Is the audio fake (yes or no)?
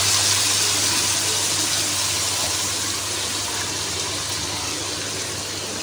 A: no